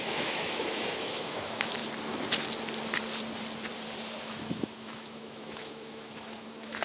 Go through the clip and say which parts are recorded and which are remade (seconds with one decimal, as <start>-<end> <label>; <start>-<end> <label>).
0.0-1.8 remade; 1.8-4.2 recorded; 4.2-6.8 remade